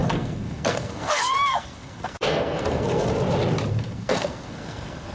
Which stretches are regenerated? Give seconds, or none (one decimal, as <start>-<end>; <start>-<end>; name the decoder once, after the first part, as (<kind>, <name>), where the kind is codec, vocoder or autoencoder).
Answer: 0.0-3.1 (codec, SNAC); 3.7-5.1